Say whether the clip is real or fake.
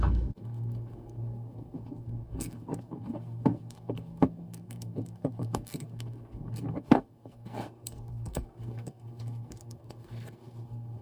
fake